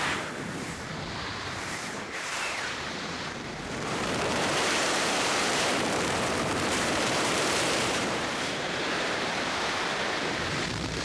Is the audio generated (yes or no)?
yes